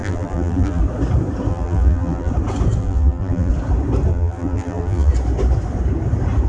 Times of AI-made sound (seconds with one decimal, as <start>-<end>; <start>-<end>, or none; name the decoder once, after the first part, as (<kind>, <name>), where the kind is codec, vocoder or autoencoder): 0.0-0.8 (vocoder, BigVGAN v2); 1.5-2.3; 2.8-3.5; 4.1-5.1